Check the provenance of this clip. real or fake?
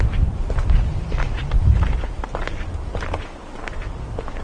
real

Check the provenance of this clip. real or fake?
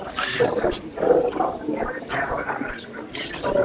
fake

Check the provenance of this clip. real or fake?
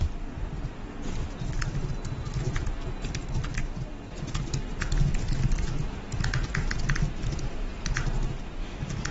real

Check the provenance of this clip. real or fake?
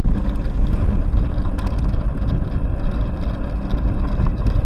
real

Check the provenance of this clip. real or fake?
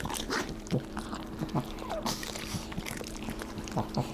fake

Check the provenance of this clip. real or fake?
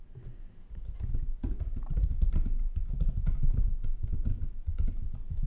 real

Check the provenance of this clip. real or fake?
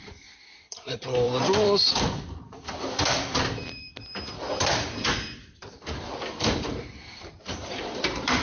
fake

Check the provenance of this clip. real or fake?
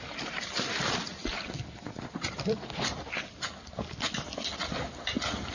real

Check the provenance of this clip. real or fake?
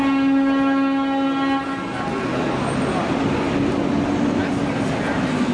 real